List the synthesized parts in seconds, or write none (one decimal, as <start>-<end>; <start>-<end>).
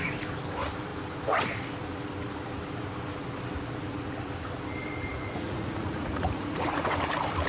5.1-7.0